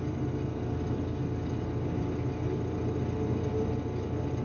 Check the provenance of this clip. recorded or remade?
recorded